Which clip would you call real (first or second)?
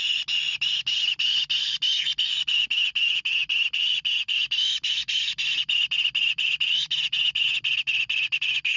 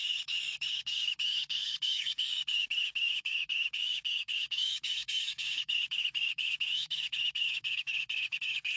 first